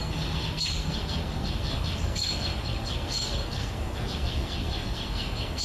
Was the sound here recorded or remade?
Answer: remade